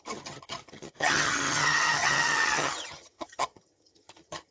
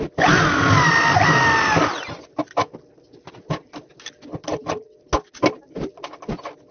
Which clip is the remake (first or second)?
first